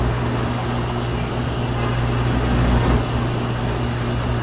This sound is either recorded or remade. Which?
recorded